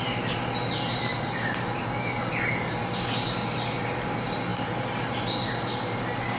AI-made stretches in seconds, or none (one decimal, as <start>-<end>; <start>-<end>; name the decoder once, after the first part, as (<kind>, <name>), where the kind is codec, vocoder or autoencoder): none